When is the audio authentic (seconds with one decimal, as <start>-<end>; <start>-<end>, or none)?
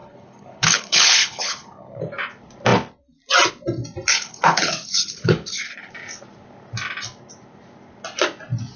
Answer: 2.0-4.1; 5.9-8.8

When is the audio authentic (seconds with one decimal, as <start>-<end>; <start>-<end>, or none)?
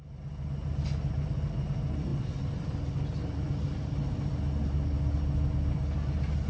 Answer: 0.0-6.5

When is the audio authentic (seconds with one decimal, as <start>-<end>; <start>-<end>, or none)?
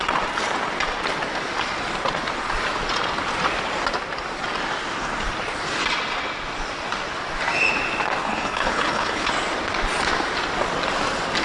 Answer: 0.0-8.2; 9.3-11.4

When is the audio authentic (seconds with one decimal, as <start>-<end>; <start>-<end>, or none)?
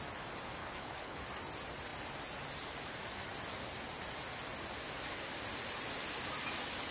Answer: 0.0-0.6; 1.2-6.9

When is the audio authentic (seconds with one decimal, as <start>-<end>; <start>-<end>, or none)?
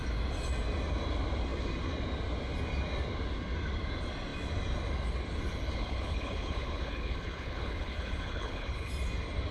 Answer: 0.0-5.7; 8.9-9.5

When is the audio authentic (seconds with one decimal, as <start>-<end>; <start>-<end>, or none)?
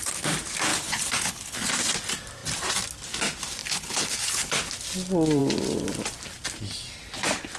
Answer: 0.0-0.7; 1.7-3.6; 4.6-7.6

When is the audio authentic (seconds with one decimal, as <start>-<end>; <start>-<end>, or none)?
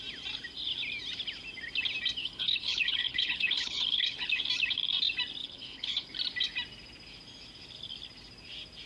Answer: 0.0-2.2; 4.4-5.4; 6.1-8.9